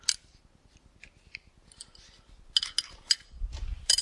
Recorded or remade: recorded